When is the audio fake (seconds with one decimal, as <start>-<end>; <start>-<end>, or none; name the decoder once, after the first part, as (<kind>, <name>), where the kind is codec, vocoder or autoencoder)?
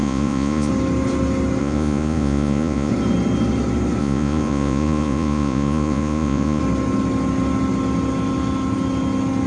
0.0-0.7 (vocoder, Vocos); 1.6-2.9; 4.0-6.6